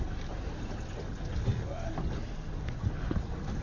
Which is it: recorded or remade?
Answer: recorded